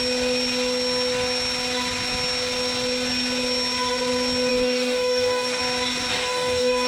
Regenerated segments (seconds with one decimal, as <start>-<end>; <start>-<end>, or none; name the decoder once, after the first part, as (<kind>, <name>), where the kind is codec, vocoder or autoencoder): 4.5-5.6 (codec, DAC); 6.1-6.9